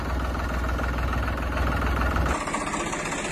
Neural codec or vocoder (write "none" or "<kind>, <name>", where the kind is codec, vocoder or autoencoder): none